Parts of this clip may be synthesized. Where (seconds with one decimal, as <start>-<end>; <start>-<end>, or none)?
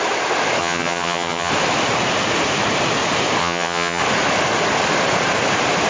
0.6-1.5; 3.4-4.0